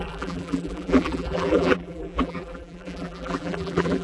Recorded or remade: remade